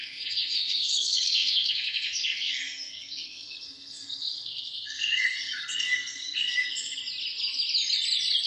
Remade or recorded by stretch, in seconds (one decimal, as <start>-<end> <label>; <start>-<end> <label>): 0.0-7.0 remade; 7.0-8.5 recorded